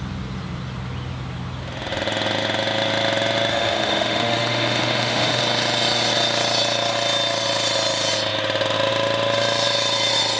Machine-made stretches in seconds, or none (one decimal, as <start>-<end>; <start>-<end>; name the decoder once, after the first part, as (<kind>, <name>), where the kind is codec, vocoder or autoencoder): 3.5-5.4 (autoencoder, DAC-VAE)